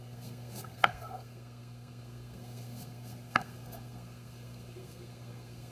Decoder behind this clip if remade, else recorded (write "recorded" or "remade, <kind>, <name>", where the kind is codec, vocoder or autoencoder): remade, codec, SNAC